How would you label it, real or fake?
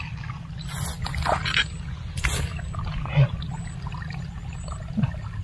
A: real